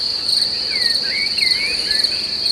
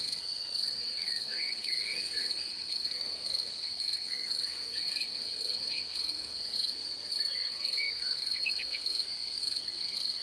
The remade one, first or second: second